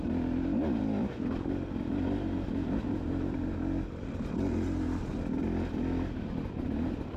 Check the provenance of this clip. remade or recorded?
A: recorded